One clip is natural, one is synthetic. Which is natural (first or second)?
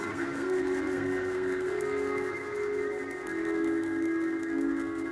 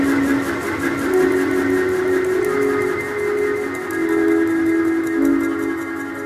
second